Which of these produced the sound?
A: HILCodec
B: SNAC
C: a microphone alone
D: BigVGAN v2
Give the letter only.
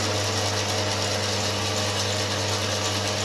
C